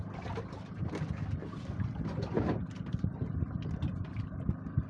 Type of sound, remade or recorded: recorded